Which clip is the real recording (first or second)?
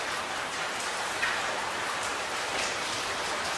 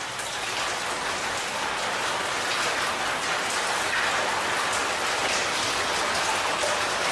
second